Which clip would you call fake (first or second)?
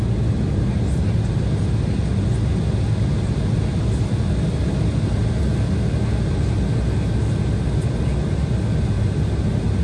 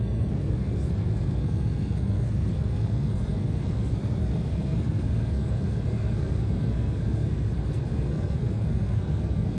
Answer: second